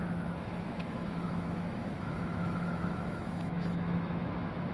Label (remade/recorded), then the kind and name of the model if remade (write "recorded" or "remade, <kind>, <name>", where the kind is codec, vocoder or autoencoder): remade, autoencoder, DAC-VAE